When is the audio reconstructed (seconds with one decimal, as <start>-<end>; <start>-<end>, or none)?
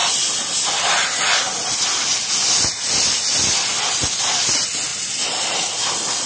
3.7-4.5; 4.9-5.5